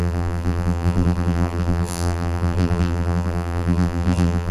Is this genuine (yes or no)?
no